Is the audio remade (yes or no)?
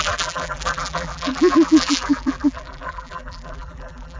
yes